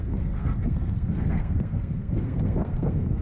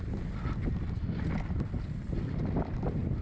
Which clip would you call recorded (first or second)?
second